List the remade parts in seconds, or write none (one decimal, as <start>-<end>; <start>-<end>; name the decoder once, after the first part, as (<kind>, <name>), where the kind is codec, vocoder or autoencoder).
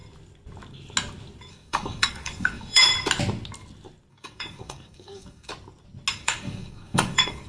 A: 1.5-2.8 (codec, DAC); 4.1-5.5; 6.1-7.5